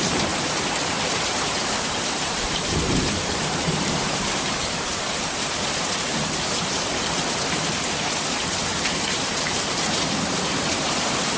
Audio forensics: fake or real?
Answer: fake